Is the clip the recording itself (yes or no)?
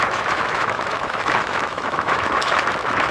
no